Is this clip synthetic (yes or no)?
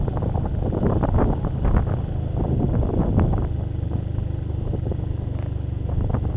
no